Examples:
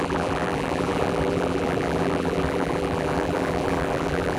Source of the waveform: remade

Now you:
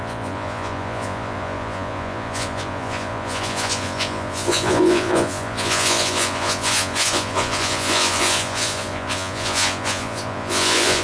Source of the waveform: remade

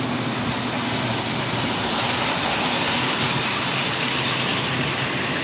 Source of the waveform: recorded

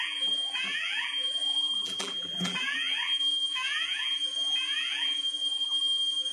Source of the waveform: remade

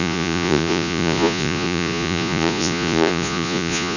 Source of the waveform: remade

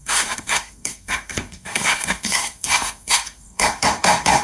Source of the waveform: remade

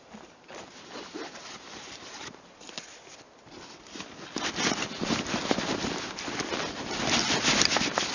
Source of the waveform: recorded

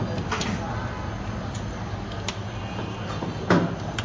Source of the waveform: recorded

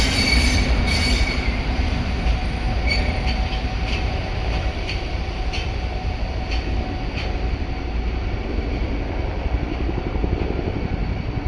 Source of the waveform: remade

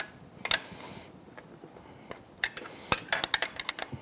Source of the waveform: recorded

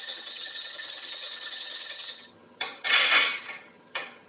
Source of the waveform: remade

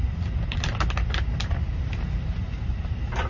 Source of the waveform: recorded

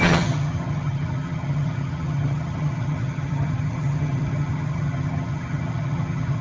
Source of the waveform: remade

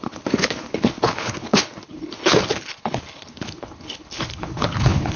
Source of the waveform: remade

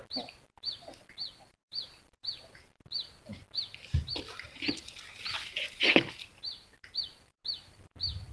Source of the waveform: recorded